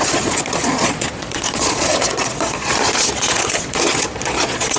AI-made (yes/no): yes